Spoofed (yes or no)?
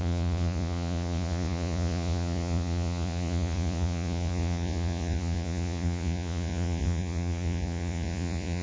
yes